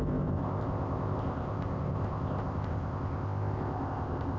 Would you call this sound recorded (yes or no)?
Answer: no